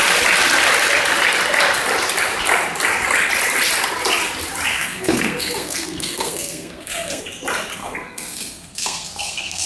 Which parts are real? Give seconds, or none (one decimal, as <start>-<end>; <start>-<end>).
0.0-4.7; 7.2-7.8